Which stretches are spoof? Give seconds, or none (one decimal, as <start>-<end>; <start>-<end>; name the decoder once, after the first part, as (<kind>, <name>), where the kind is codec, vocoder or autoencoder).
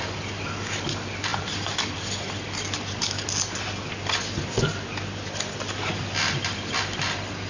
none